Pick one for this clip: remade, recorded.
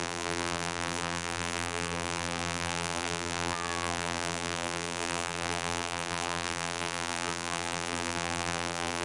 remade